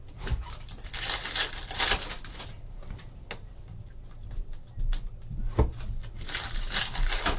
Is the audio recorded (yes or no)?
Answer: yes